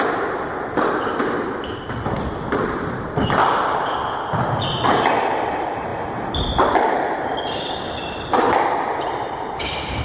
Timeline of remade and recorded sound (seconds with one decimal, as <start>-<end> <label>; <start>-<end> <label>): 0.0-3.4 remade; 3.4-5.1 recorded; 5.1-5.9 remade; 5.9-6.6 recorded; 6.6-10.0 remade